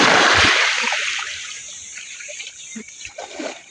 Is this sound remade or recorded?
remade